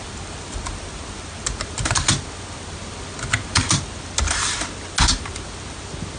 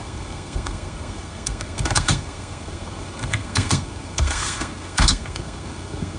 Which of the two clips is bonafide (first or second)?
first